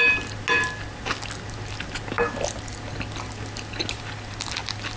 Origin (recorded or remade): recorded